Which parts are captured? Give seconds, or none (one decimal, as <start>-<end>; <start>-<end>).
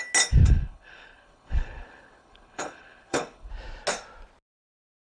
0.0-0.4; 3.5-5.2